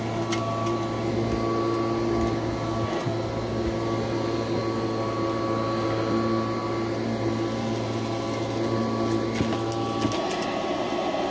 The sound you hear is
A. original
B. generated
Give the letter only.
A